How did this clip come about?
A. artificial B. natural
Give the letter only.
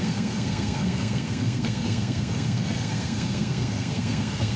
A